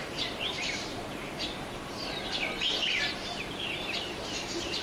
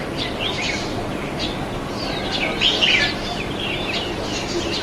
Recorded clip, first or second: second